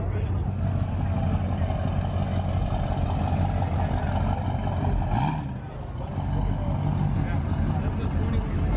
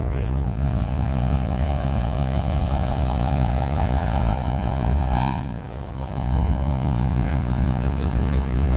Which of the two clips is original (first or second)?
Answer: first